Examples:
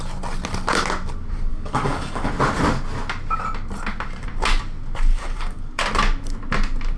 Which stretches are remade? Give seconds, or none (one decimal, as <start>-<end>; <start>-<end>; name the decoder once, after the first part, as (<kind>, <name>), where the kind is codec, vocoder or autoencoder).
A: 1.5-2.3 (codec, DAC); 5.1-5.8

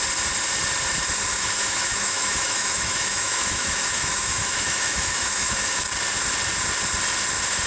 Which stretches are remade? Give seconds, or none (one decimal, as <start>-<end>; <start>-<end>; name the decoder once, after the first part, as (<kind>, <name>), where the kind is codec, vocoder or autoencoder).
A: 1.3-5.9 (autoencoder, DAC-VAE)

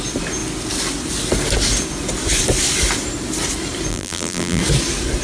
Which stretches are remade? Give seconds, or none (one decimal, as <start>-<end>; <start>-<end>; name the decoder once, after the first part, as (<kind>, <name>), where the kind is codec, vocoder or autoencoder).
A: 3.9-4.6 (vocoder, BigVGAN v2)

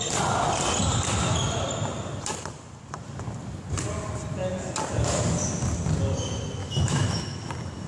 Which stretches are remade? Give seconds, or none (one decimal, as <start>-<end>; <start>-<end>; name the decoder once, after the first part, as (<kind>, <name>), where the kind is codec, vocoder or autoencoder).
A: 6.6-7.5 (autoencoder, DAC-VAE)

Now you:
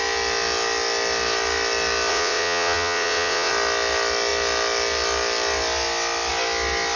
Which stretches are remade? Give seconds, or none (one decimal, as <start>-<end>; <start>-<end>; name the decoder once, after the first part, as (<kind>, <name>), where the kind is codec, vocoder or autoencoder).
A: 2.1-3.5 (vocoder, WaveNeXt)